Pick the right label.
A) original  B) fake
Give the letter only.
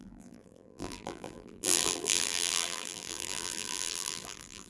B